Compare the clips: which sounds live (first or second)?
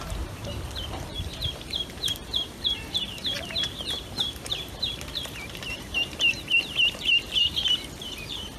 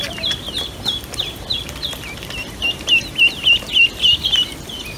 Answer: second